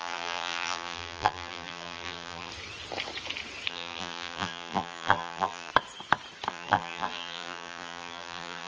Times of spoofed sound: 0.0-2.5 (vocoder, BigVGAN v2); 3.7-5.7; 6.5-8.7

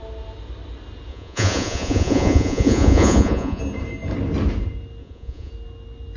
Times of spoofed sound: 1.1-3.6 (vocoder, Vocos); 5.0-5.5